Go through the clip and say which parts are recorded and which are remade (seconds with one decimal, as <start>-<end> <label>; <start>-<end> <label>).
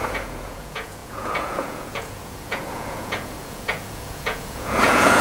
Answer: 0.0-5.2 remade